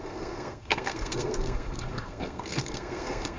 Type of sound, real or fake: fake